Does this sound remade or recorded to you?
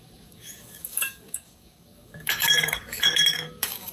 remade